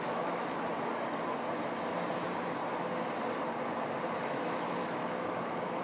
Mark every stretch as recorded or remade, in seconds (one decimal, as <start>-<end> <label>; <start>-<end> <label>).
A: 0.0-0.7 remade; 0.7-4.2 recorded; 4.2-5.8 remade